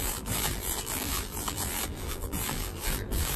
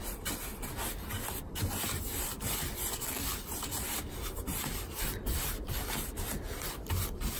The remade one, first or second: first